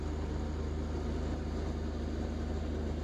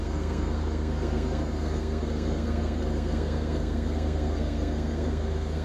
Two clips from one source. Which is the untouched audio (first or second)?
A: first